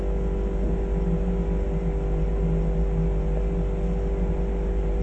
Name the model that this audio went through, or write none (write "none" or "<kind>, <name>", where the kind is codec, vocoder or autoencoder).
none